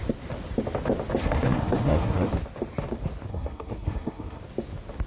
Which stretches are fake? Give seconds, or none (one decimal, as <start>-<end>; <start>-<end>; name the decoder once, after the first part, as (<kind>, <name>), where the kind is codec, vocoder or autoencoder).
1.2-2.3 (codec, SNAC); 3.3-4.4

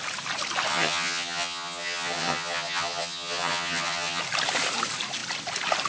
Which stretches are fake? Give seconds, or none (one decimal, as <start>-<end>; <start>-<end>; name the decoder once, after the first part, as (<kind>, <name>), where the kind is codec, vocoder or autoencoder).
0.7-4.2 (vocoder, HiFi-GAN)

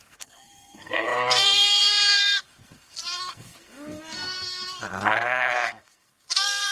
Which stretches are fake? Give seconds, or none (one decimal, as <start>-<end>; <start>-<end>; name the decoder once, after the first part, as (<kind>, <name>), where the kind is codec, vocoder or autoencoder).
0.0-6.7 (codec, SNAC)

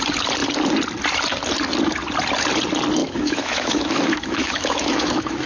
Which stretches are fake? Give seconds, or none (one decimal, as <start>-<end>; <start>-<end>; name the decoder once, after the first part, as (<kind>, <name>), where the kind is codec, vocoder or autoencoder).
3.0-5.5 (autoencoder, DAC-VAE)

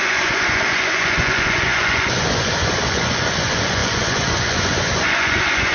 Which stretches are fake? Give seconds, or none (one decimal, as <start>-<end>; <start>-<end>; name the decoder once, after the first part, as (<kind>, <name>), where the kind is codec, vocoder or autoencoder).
0.0-5.7 (vocoder, Vocos)

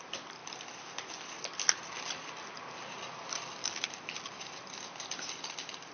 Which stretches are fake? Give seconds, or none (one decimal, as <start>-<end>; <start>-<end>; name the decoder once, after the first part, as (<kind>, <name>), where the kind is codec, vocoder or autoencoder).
none

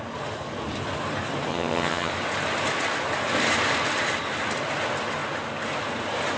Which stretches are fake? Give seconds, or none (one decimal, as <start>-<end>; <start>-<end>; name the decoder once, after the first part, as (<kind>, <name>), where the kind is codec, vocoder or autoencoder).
1.5-2.1 (vocoder, HiFi-GAN)